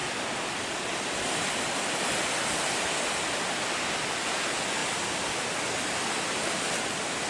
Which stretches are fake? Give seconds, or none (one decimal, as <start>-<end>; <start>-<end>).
none